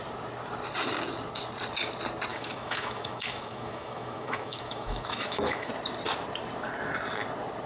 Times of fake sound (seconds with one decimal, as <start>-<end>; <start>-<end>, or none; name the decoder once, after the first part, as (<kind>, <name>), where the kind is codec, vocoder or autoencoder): 2.3-5.7 (autoencoder, DAC-VAE)